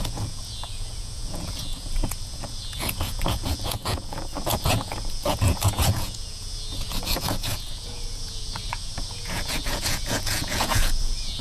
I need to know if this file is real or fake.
fake